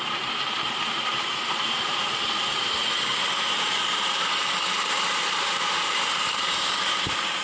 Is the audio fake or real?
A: fake